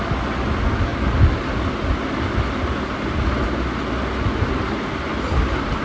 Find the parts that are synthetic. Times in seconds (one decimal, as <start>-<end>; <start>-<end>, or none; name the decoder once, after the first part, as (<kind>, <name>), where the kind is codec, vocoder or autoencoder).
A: none